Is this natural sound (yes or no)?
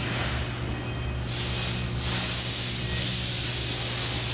yes